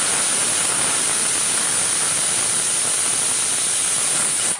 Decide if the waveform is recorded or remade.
recorded